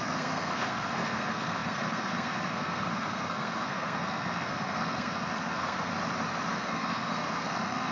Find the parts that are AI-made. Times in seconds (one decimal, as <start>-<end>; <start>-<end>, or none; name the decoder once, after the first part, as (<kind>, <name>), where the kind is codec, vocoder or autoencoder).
0.0-5.9 (codec, SNAC); 6.5-7.9

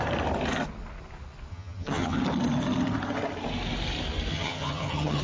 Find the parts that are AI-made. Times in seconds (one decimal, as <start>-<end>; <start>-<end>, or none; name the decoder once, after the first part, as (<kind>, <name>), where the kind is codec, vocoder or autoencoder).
1.5-2.2 (vocoder, HiFi-GAN); 4.3-5.2

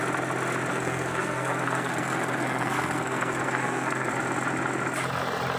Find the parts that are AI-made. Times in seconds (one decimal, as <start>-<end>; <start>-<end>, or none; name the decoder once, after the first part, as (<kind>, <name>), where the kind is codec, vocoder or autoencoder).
0.7-4.1 (codec, SNAC)

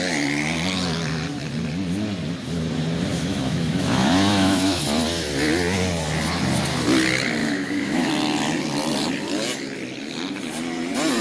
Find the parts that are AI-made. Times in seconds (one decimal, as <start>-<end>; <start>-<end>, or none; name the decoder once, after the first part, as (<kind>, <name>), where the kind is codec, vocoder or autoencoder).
3.1-4.8 (autoencoder, DAC-VAE); 7.4-8.1

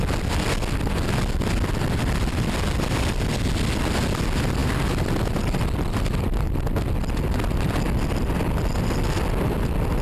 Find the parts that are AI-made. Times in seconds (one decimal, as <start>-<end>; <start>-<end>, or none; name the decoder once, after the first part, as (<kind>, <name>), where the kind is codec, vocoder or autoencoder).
none

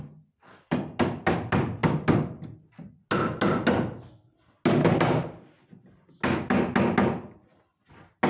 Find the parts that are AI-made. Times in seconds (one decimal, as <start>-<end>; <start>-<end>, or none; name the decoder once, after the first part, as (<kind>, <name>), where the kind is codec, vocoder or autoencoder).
none

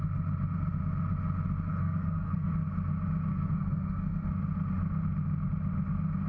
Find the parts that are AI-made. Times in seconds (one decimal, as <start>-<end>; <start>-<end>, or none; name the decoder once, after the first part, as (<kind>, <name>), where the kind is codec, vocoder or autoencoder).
1.7-2.5 (codec, SNAC); 3.3-4.3